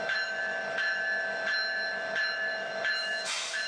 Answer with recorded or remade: remade